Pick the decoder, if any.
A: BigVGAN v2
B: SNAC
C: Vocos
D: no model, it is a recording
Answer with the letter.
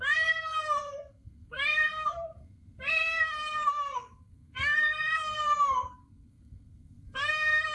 B